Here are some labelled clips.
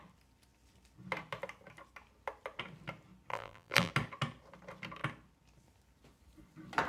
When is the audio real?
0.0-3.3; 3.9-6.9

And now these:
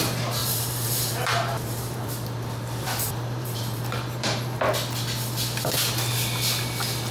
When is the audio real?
0.0-0.4; 4.6-7.1

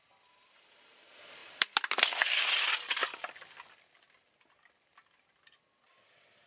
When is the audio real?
0.0-1.4; 3.2-6.5

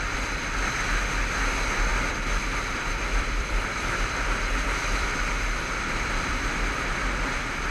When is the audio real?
0.0-1.9; 6.5-7.7

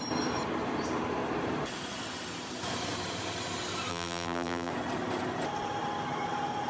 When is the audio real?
0.0-3.9; 4.7-6.7

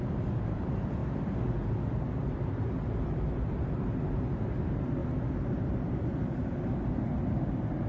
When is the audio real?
1.0-2.0; 5.0-6.1